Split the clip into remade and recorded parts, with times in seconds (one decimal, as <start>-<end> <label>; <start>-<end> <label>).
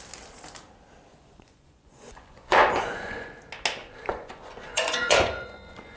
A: 0.0-1.1 recorded; 1.1-3.4 remade; 3.4-3.8 recorded; 3.8-6.0 remade